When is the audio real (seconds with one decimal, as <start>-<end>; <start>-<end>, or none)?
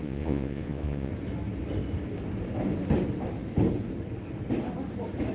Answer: 1.1-5.3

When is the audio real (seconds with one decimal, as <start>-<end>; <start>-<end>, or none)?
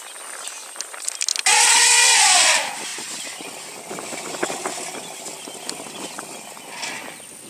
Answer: 0.0-7.5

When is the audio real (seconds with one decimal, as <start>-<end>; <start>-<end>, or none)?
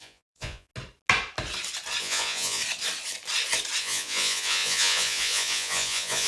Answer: 0.7-2.0; 2.6-3.8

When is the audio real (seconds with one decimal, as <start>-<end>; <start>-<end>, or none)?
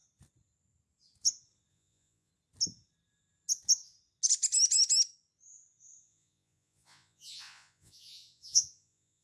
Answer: 0.0-1.7; 2.3-6.0